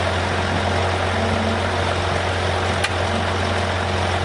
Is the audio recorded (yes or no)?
yes